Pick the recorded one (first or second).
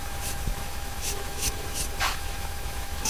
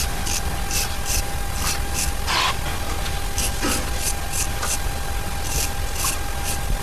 second